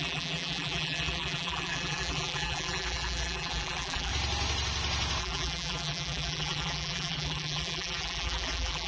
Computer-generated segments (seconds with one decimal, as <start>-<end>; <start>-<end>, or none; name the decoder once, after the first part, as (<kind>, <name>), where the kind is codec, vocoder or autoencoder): 0.0-4.1 (vocoder, BigVGAN v2); 5.2-8.9